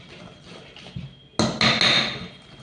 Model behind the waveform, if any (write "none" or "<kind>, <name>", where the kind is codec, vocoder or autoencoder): none